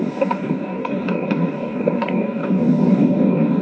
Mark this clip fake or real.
fake